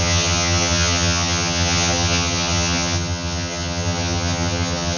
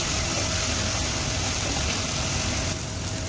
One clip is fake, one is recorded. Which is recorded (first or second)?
second